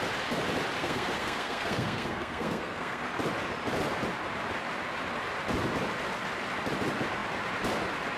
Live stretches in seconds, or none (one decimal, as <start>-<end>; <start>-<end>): 0.0-0.8; 3.0-8.2

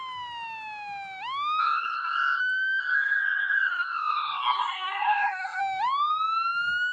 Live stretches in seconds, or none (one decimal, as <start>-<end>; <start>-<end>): 0.0-1.6; 2.4-2.8; 5.6-6.9

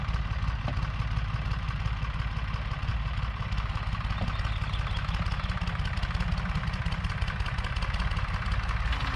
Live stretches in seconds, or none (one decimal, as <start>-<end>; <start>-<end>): 0.0-9.2

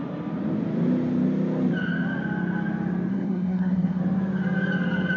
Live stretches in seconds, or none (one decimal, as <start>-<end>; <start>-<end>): 0.0-3.1; 4.0-5.2

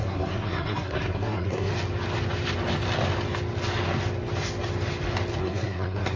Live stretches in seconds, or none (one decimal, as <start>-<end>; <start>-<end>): 1.7-5.4

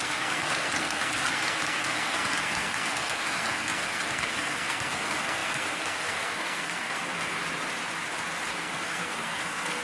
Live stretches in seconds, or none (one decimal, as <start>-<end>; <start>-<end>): 7.4-8.5

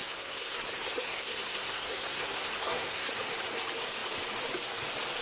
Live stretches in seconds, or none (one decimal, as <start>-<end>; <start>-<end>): 3.1-5.2

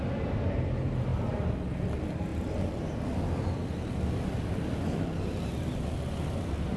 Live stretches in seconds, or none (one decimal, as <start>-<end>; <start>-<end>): 0.0-6.8